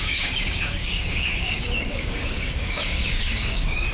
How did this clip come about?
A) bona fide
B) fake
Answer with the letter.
B